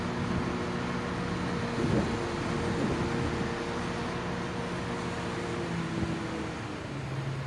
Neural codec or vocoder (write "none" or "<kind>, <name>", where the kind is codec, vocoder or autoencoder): none